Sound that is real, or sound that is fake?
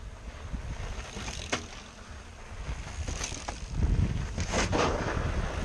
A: real